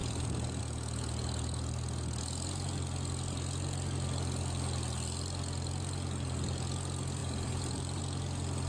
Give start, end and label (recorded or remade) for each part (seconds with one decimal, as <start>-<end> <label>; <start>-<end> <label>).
0.0-0.6 remade; 0.6-7.2 recorded; 7.2-8.0 remade; 8.0-8.7 recorded